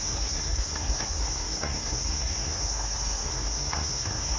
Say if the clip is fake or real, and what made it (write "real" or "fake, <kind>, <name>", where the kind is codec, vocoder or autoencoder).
fake, codec, SNAC